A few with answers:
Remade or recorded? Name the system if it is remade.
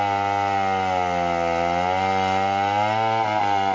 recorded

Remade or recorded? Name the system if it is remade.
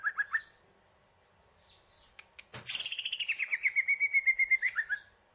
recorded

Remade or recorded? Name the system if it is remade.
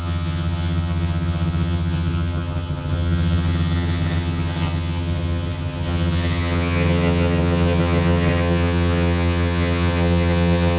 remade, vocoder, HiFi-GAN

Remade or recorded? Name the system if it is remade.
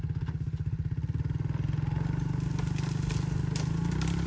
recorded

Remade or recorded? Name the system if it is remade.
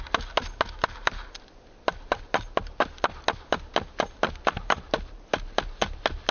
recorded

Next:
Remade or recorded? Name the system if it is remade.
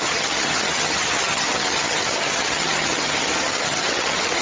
remade, vocoder, HiFi-GAN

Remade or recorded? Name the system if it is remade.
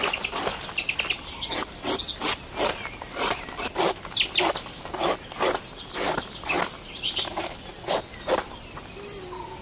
recorded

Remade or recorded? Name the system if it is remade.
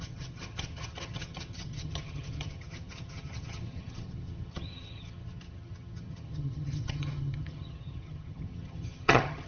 remade, vocoder, HiFi-GAN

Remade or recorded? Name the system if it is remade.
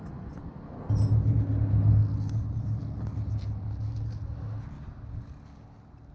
recorded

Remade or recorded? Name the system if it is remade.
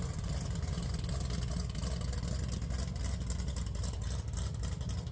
recorded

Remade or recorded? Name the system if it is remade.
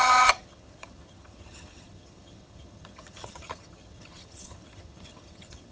remade, vocoder, HiFi-GAN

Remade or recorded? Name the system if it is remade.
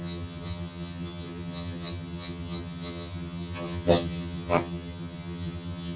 remade, vocoder, HiFi-GAN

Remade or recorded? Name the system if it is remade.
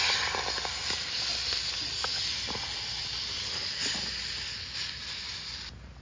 recorded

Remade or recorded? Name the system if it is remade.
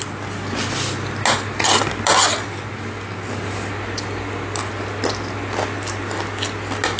recorded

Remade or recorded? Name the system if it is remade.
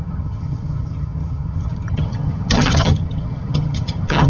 remade, vocoder, HiFi-GAN